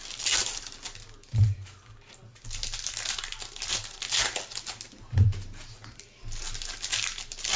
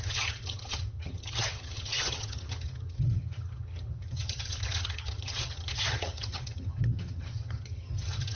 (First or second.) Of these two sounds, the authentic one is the first